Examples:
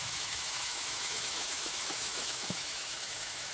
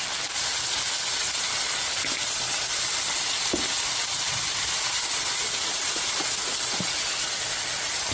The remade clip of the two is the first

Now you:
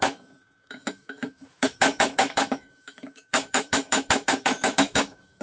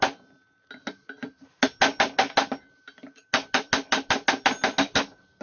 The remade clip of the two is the first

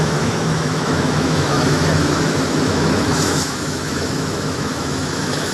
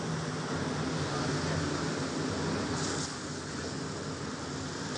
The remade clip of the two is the first